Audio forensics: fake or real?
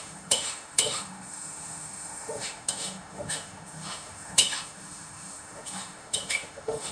fake